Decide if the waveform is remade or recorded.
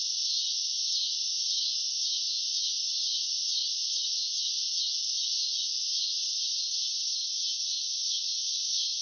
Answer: recorded